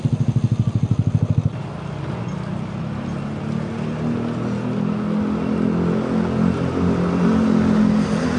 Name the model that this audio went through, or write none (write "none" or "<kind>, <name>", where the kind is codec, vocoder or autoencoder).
none